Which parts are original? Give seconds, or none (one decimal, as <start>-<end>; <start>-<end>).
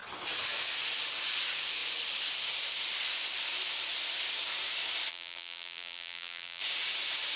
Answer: 0.0-5.1; 6.6-7.4